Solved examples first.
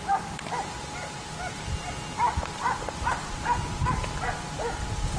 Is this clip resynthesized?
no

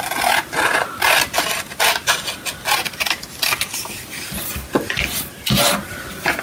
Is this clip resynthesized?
no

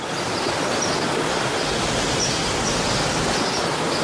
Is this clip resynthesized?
no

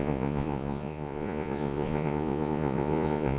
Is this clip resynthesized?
yes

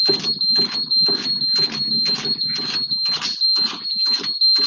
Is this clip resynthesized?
no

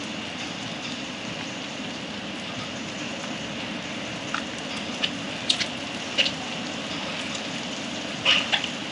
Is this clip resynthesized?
no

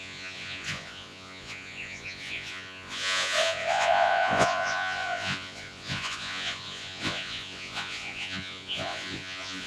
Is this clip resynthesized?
yes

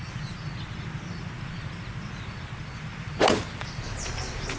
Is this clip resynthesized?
no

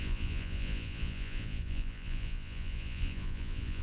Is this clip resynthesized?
yes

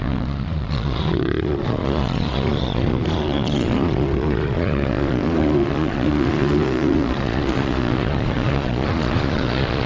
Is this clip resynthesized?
yes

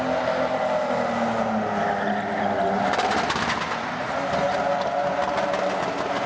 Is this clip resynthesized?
no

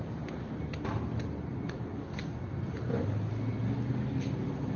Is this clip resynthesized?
no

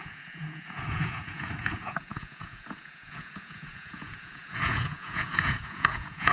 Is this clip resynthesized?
yes